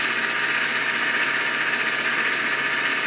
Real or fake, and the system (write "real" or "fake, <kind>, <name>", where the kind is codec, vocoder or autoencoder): real